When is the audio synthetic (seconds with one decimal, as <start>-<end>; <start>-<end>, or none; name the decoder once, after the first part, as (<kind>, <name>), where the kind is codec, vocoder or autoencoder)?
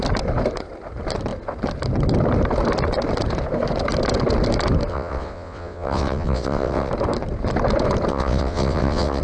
4.9-6.9 (vocoder, WaveNeXt); 8.1-9.2